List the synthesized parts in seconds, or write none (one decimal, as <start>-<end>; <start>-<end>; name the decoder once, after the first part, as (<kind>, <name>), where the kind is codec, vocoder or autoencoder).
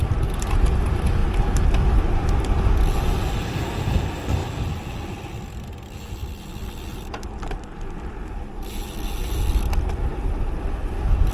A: none